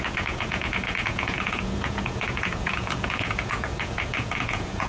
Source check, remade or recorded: remade